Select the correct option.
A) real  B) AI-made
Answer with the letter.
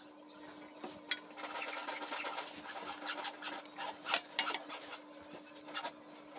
A